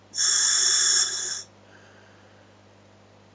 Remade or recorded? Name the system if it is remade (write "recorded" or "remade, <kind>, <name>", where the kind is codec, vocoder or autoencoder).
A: recorded